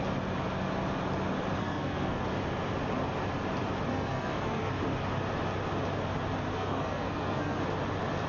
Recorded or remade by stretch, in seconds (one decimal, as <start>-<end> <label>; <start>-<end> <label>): 0.0-1.6 recorded; 1.6-2.2 remade; 2.2-3.9 recorded; 3.9-4.7 remade; 4.7-6.5 recorded; 6.5-7.6 remade; 7.6-8.3 recorded